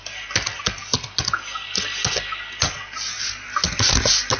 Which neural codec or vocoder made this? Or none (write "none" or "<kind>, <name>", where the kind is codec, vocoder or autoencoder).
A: none